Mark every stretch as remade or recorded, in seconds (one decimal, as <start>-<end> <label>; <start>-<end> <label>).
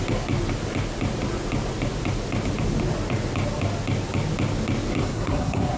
0.0-5.0 recorded; 5.0-5.8 remade